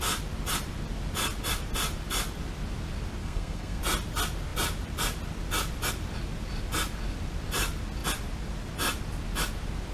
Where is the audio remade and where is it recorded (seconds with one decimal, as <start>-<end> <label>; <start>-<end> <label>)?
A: 0.0-3.2 recorded; 3.2-3.8 remade; 3.8-9.9 recorded